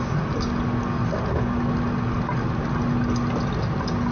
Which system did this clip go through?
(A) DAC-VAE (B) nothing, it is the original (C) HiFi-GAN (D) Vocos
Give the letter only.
B